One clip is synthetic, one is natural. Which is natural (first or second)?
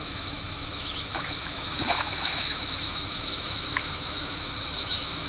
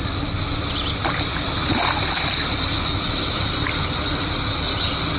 second